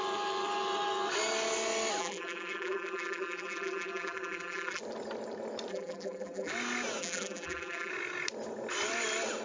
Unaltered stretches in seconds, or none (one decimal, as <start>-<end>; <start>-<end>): 0.0-2.0; 4.8-5.7; 6.5-7.0; 7.9-9.4